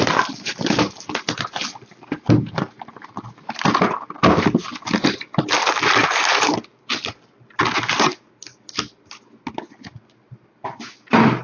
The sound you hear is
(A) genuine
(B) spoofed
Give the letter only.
A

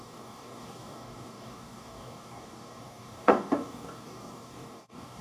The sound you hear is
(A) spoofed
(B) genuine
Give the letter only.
A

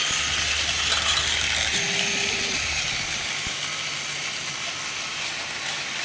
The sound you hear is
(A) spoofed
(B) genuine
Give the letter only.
B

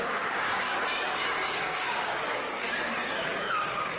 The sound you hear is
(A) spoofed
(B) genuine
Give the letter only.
A